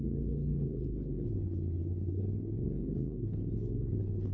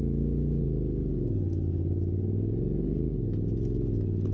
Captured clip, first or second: second